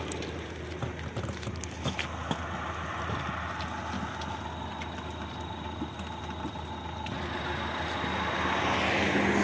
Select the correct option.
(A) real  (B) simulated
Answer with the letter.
A